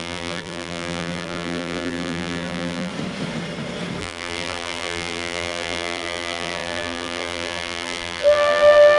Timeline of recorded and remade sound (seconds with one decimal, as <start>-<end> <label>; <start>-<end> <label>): 0.0-2.9 remade; 2.9-4.0 recorded; 4.0-9.0 remade